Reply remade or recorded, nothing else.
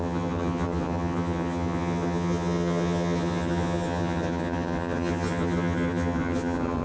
remade